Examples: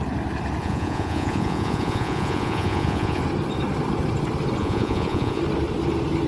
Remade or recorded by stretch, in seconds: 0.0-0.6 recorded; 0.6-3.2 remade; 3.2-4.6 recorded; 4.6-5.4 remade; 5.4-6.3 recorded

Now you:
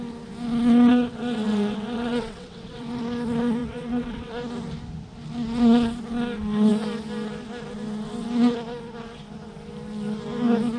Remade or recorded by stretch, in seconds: 0.0-0.9 recorded; 0.9-3.0 remade; 3.0-3.6 recorded; 3.6-4.3 remade; 4.3-10.8 recorded

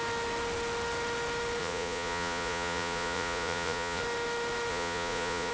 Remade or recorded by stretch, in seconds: 0.0-1.6 recorded; 1.6-4.0 remade; 4.0-4.7 recorded; 4.7-5.5 remade

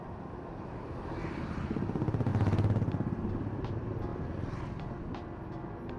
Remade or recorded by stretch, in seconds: 0.0-6.0 recorded

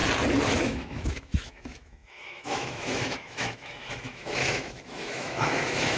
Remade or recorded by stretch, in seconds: 0.0-0.6 recorded; 0.6-6.0 remade